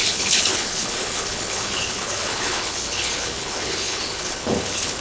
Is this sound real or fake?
fake